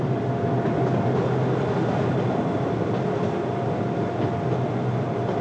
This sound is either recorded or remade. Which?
recorded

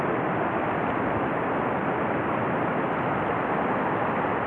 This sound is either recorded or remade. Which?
recorded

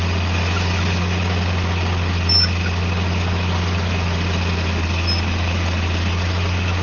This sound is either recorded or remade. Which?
recorded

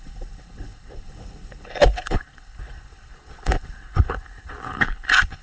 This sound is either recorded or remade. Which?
remade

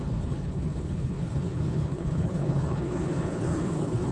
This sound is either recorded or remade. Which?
remade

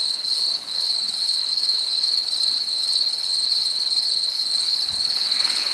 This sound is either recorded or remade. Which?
remade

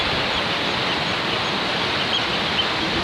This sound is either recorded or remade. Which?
recorded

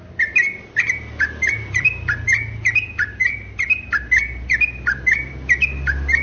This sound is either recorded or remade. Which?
recorded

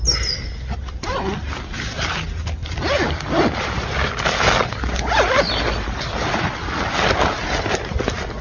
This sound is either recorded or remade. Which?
recorded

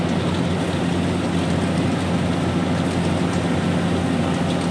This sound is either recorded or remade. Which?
recorded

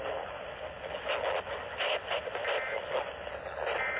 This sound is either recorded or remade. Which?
recorded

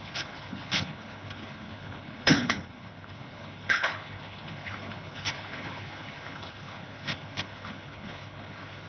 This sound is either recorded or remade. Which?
remade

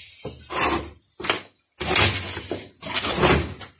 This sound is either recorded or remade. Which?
recorded